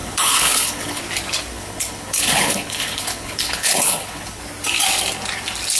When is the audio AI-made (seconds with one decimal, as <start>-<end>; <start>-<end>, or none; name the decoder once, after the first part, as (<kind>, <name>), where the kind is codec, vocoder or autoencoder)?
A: 0.0-1.0 (codec, HILCodec); 1.5-4.4